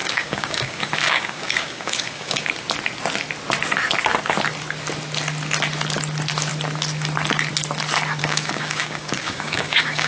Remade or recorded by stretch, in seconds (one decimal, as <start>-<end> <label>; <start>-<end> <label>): 0.0-2.5 remade; 2.5-8.2 recorded; 8.2-10.1 remade